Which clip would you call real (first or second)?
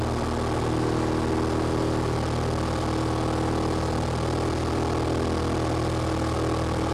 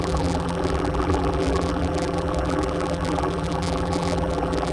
first